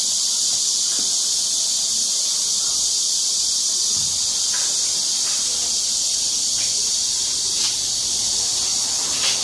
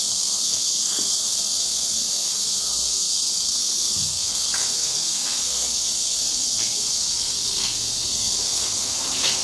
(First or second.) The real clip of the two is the first